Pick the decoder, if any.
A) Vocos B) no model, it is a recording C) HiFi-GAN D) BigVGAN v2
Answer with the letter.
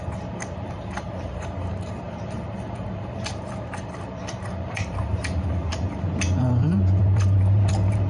D